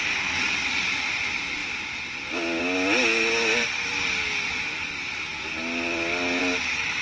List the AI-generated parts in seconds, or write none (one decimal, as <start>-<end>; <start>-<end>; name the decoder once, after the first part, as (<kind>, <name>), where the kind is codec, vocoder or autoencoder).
none